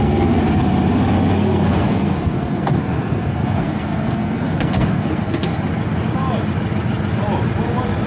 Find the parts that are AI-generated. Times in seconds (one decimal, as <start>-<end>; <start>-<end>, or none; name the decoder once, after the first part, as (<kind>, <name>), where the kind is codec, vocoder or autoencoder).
0.0-0.4 (codec, SNAC); 1.1-5.5